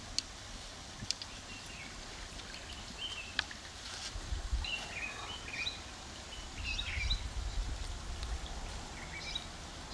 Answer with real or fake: real